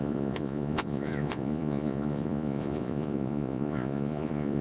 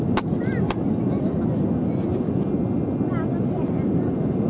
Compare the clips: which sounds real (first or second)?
second